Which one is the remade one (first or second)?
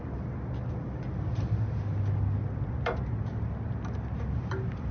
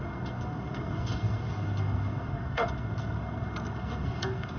second